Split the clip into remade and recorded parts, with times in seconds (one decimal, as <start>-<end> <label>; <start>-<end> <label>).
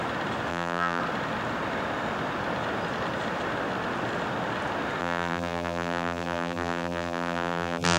0.0-0.5 recorded; 0.5-1.0 remade; 1.0-5.0 recorded; 5.0-8.0 remade